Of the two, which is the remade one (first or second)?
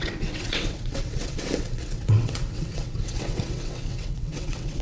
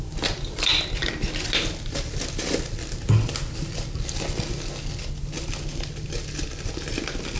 first